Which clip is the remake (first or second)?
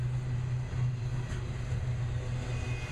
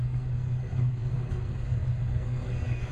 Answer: second